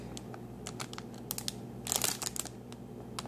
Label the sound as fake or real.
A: real